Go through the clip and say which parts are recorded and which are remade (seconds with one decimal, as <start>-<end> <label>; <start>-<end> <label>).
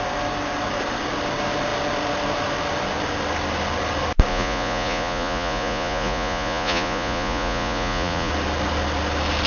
0.0-4.3 recorded; 4.3-8.3 remade; 8.3-9.5 recorded